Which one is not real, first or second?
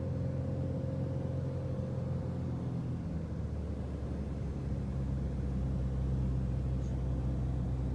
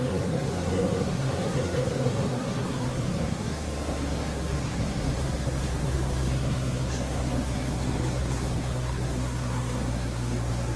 second